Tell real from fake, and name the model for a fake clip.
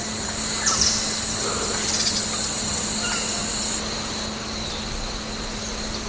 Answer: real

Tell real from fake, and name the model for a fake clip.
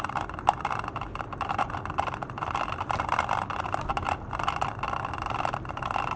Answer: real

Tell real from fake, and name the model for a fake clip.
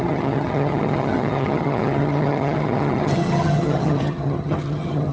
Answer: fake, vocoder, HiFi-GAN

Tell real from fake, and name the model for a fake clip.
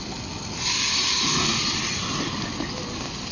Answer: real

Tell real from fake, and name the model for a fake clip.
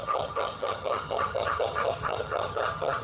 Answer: fake, vocoder, HiFi-GAN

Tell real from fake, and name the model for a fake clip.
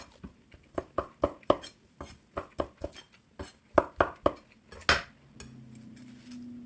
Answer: real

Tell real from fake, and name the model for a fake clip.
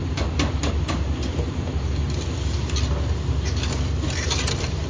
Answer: real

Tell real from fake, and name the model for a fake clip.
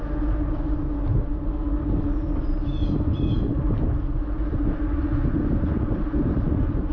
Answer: real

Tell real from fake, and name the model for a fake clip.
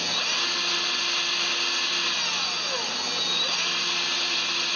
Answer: real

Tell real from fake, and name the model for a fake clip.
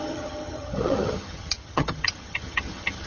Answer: fake, vocoder, HiFi-GAN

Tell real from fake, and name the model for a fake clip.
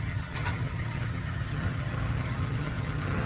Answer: fake, vocoder, HiFi-GAN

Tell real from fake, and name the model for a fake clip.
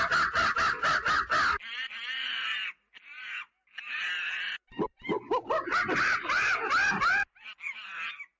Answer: real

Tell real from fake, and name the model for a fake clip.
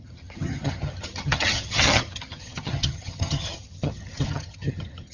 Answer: fake, vocoder, HiFi-GAN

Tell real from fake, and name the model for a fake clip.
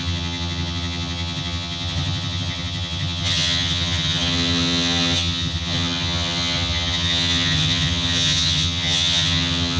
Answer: fake, vocoder, HiFi-GAN